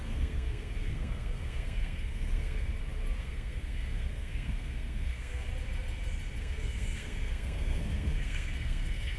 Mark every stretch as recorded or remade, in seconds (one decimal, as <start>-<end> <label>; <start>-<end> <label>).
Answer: 0.0-2.7 remade; 2.7-3.2 recorded; 3.2-5.5 remade; 5.5-6.4 recorded; 6.4-9.2 remade